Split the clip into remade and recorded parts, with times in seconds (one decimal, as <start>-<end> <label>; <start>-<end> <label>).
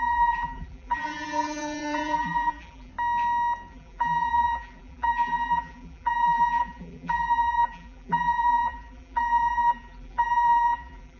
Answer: 0.0-2.9 remade; 2.9-3.7 recorded; 3.7-11.2 remade